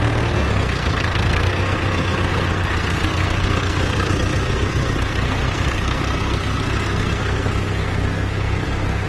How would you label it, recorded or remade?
remade